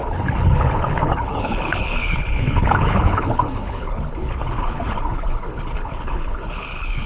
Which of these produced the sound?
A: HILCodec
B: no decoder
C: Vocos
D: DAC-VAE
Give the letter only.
A